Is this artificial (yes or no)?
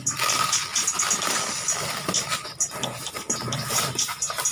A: no